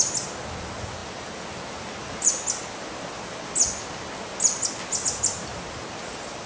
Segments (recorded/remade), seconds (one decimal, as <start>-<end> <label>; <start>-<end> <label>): 0.0-6.5 recorded